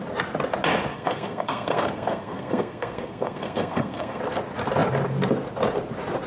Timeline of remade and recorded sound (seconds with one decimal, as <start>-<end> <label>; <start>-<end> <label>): 0.0-0.9 recorded; 0.9-4.2 remade; 4.2-6.3 recorded